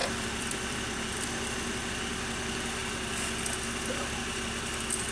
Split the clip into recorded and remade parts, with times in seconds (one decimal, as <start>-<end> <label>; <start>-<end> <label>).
0.0-1.5 remade; 1.5-5.1 recorded